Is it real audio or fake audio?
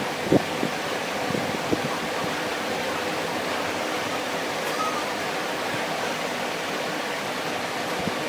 fake